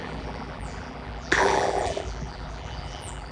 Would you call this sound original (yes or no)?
no